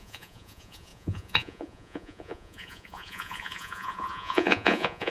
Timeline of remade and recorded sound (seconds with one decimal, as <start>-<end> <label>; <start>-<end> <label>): 0.0-5.1 remade